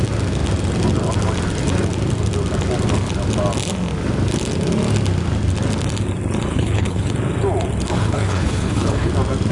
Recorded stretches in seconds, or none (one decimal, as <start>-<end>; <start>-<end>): 0.0-6.5; 7.1-7.9; 9.1-9.5